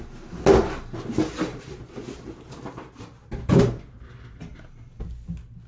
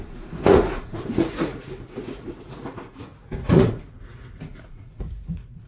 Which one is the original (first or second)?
first